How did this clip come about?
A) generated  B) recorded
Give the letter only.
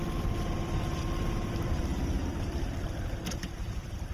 A